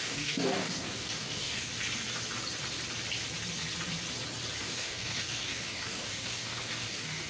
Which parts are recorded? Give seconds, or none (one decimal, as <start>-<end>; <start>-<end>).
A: 1.7-4.6